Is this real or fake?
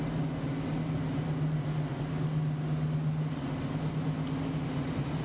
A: real